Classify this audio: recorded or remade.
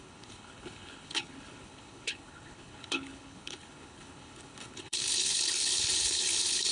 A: remade